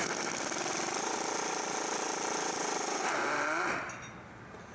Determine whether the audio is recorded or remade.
recorded